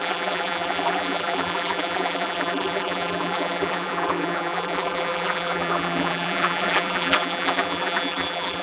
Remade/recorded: remade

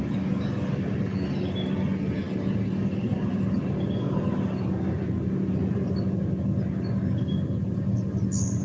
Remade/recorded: recorded